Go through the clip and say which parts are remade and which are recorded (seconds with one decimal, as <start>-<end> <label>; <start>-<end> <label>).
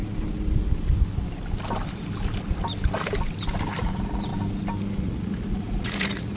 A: 0.0-3.8 recorded; 3.8-4.3 remade; 4.3-5.0 recorded; 5.0-6.4 remade